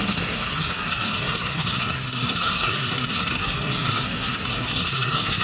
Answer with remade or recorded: remade